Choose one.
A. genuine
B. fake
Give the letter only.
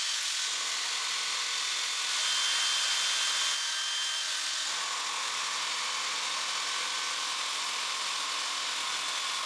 A